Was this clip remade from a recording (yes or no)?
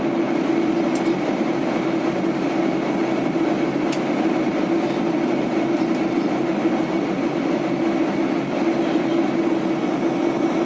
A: no